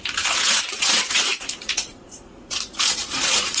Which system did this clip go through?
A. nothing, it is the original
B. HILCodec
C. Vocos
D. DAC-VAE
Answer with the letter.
C